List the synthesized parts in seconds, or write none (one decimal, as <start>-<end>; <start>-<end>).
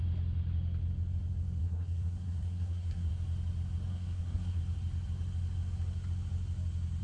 1.6-3.1; 3.9-4.6